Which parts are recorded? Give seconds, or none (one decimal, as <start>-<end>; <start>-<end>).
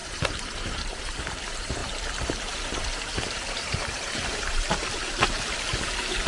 none